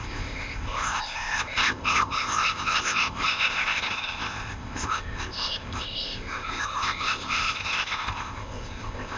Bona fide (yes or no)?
no